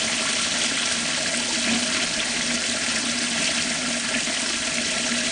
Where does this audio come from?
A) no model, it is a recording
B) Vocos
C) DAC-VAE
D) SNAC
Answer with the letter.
A